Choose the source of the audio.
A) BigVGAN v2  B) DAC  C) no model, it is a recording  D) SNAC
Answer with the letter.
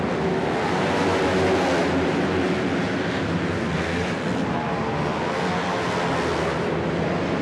C